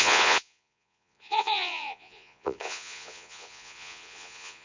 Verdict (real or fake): fake